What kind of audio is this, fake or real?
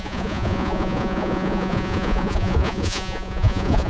fake